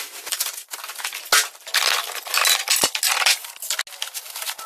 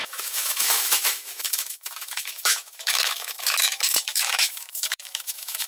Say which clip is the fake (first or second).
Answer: second